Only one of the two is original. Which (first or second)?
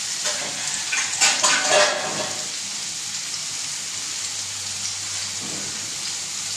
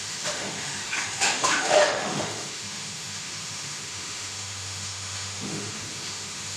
first